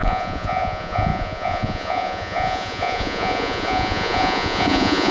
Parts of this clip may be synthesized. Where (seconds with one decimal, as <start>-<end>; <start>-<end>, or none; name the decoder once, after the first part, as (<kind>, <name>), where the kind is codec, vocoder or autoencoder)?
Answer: 0.0-5.1 (vocoder, Vocos)